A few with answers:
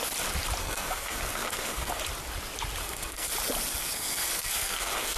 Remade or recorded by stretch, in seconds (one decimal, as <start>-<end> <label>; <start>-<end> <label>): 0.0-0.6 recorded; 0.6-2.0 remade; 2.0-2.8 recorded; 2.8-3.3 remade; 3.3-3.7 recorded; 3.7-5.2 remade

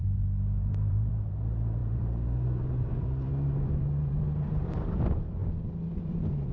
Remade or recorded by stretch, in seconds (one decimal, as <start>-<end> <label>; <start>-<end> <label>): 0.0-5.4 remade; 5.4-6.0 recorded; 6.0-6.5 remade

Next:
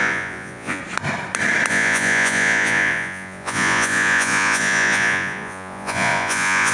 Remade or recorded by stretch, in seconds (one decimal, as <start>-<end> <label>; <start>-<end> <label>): 0.0-0.8 remade; 0.8-1.7 recorded; 1.7-6.7 remade

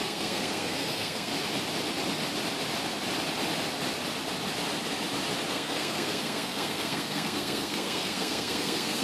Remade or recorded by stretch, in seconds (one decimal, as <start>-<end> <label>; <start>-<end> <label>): 0.0-1.3 remade; 1.3-5.5 recorded; 5.5-9.0 remade